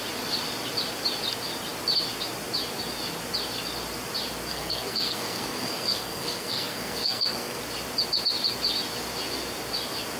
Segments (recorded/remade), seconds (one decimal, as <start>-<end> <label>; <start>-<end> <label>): 0.0-4.5 recorded; 4.5-7.6 remade; 7.6-10.2 recorded